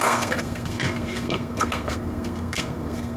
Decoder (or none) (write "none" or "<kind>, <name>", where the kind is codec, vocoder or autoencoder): codec, SNAC